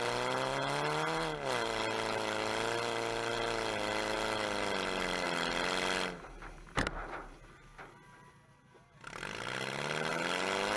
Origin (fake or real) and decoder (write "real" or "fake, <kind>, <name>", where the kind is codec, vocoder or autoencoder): real